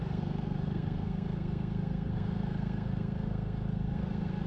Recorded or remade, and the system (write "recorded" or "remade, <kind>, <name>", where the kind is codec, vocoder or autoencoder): remade, codec, SNAC